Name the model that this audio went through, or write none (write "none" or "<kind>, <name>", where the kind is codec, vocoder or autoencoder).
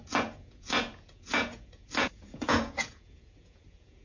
vocoder, Vocos